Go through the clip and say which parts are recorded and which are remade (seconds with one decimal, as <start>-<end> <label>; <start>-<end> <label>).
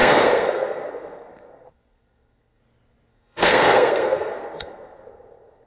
0.0-2.6 remade; 2.6-3.1 recorded; 3.1-5.7 remade